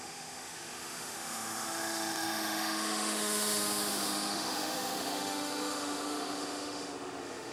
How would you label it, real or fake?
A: fake